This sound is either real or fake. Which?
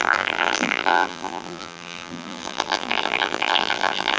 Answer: fake